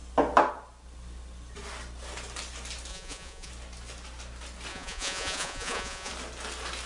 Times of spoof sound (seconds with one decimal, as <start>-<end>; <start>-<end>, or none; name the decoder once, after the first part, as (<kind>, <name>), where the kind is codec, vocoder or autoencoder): 2.9-3.5 (vocoder, Vocos); 4.7-6.1